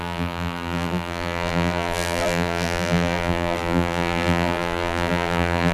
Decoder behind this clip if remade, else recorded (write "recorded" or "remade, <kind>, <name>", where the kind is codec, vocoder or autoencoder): remade, vocoder, BigVGAN v2